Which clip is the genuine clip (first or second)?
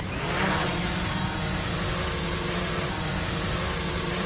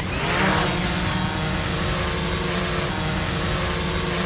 second